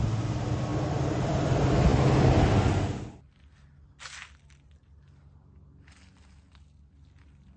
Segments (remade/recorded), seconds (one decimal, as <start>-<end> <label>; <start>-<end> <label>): 0.0-7.6 recorded